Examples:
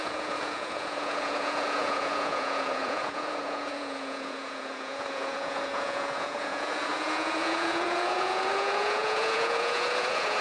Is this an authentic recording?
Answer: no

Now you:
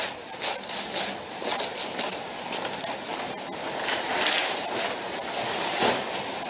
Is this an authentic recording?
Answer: yes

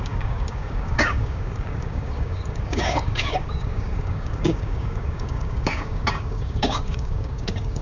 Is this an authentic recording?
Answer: no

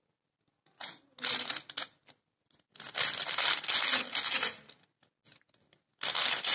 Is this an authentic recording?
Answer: yes